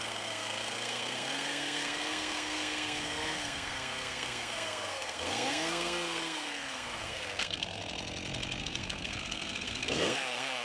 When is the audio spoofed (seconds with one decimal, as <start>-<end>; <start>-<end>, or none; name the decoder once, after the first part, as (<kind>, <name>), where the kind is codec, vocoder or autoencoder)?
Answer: 0.0-7.8 (codec, SNAC); 8.6-10.6